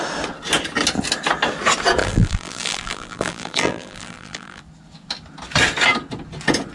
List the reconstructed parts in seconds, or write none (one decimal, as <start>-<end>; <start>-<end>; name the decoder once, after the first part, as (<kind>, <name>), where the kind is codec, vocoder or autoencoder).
2.0-4.6 (vocoder, BigVGAN v2)